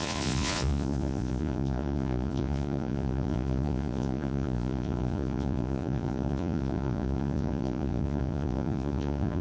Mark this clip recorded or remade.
remade